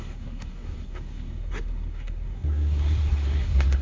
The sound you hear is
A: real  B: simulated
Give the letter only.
B